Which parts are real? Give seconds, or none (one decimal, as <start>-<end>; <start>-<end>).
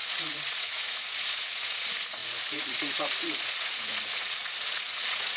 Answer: none